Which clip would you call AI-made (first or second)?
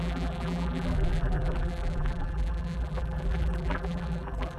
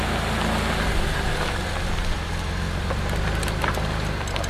first